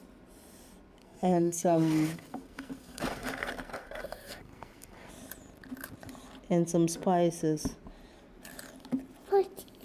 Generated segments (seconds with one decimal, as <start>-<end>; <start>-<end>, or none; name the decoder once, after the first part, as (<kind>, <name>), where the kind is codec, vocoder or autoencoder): 1.0-5.1 (codec, SNAC)